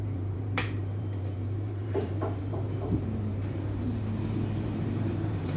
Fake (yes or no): yes